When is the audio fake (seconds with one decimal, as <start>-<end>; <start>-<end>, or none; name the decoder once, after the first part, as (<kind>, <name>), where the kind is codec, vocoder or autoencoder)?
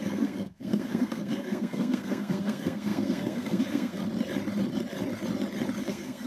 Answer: 0.0-4.0 (codec, SNAC); 5.8-6.3